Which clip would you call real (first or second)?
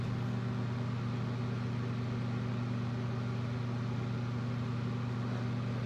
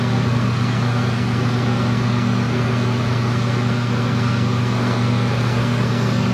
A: first